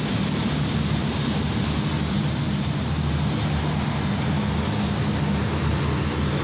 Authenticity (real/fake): real